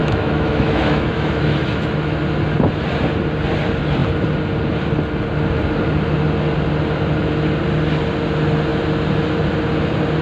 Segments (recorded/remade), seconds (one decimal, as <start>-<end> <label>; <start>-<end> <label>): 0.0-2.2 remade; 2.2-10.2 recorded